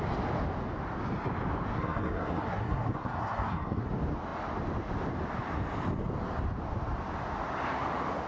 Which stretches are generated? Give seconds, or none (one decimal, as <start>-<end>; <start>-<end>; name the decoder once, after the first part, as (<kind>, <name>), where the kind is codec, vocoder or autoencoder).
1.7-3.9 (codec, SNAC)